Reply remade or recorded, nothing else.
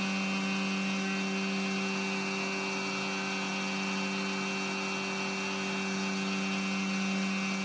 recorded